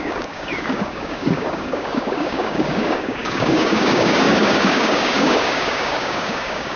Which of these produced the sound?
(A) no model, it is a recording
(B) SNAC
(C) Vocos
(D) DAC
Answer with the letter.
D